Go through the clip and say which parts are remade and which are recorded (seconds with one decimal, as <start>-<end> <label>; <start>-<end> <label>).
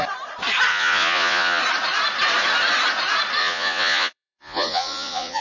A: 0.0-0.7 recorded; 0.7-1.6 remade; 1.6-3.4 recorded; 3.4-5.4 remade